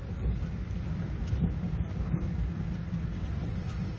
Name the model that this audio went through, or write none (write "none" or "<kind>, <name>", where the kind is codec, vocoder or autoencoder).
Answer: none